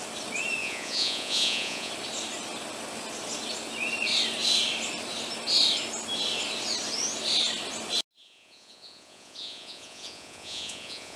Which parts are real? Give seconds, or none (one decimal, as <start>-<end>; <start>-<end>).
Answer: 0.0-0.6; 1.9-8.2